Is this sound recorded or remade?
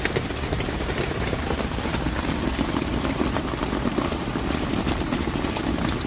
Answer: remade